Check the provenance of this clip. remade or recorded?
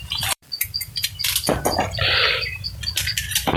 remade